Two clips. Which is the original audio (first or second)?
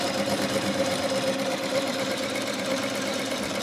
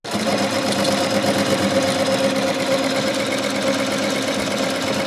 second